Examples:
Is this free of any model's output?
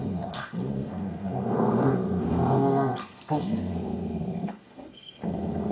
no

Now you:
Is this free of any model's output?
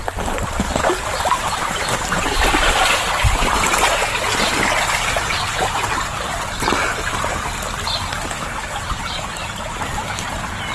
yes